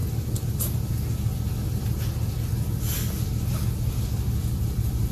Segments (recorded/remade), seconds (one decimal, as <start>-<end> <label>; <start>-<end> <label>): 0.0-5.1 recorded